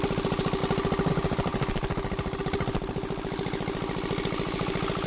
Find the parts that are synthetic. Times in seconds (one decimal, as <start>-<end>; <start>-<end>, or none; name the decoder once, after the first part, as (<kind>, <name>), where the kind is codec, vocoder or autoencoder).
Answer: none